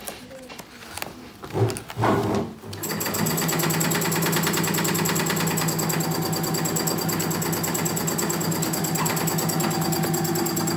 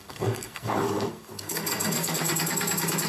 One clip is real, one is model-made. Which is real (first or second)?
first